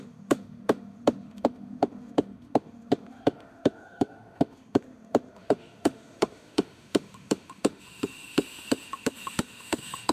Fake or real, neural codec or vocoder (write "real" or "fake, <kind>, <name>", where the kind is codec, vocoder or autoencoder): fake, autoencoder, DAC-VAE